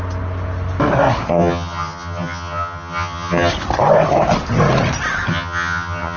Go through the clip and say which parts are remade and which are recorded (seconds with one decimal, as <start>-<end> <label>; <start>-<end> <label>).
0.0-1.3 recorded; 1.3-3.5 remade; 3.5-5.3 recorded; 5.3-6.2 remade